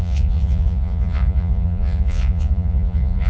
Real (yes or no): no